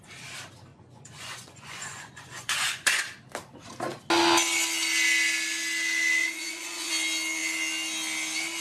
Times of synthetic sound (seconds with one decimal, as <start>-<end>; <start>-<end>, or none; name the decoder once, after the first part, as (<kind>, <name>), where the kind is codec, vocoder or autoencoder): 0.7-3.0 (vocoder, Vocos); 6.2-6.9